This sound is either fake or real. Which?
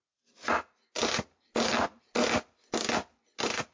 real